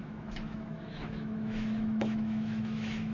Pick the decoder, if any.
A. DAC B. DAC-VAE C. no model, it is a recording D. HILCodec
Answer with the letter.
B